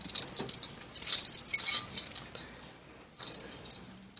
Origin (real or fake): real